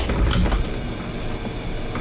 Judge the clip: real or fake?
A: real